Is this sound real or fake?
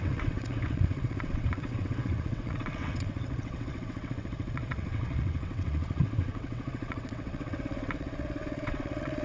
fake